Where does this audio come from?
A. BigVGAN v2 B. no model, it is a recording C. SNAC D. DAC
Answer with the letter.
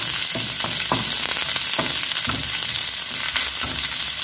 B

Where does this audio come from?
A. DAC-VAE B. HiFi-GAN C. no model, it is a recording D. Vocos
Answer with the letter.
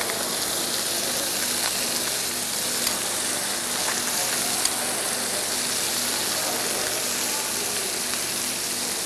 C